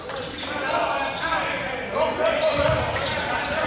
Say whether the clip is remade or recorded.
recorded